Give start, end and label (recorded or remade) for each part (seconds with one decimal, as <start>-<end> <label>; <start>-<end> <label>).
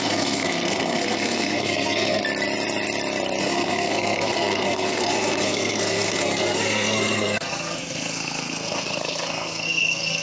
0.0-2.2 remade; 2.2-3.4 recorded; 3.4-10.2 remade